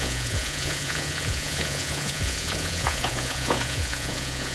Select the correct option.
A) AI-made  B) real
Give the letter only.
A